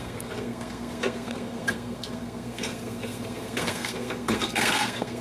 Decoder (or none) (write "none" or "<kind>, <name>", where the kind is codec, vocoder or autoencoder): codec, SNAC